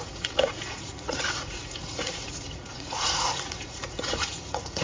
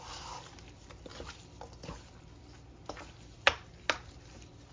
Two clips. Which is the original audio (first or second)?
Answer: second